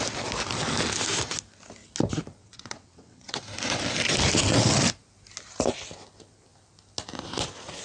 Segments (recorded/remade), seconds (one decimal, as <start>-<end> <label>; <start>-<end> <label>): 0.0-2.4 recorded; 2.4-3.4 remade; 3.4-7.8 recorded